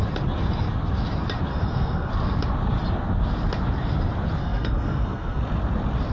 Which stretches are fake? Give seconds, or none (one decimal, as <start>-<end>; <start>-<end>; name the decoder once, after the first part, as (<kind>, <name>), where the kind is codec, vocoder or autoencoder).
1.5-2.1 (codec, SNAC); 4.4-5.4